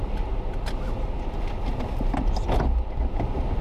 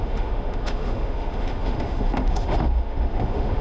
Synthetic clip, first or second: second